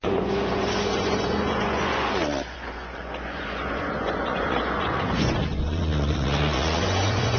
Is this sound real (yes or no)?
no